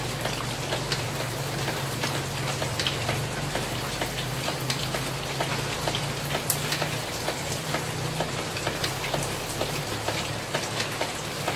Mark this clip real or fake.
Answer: real